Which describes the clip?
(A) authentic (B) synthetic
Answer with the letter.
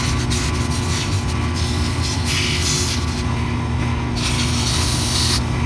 A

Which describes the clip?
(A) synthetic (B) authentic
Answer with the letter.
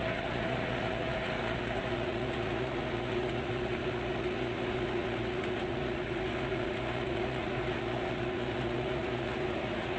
A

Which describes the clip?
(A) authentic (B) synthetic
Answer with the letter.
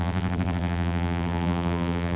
B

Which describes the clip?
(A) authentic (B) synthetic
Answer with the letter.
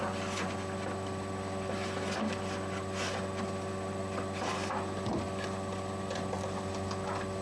A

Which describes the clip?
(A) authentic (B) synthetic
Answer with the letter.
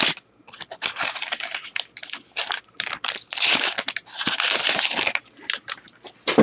A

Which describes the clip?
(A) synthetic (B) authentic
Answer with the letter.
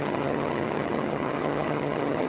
A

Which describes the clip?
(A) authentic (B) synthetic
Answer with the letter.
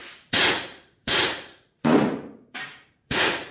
B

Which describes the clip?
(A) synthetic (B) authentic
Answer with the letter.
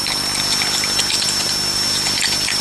A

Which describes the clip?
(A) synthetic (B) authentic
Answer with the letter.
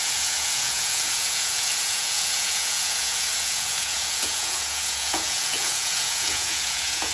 A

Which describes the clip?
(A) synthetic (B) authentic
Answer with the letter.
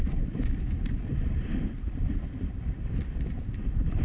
B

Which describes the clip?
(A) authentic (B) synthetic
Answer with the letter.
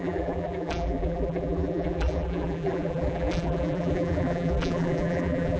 B